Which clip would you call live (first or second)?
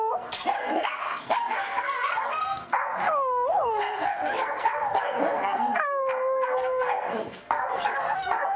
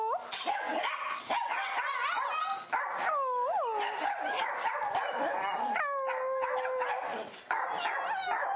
second